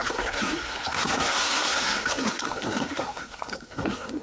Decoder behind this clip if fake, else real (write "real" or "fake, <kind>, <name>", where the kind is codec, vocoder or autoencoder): fake, codec, SNAC